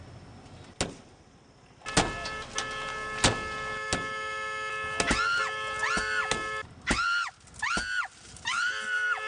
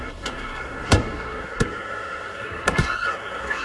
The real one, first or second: first